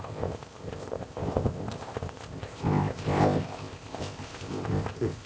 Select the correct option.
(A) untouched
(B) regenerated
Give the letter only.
B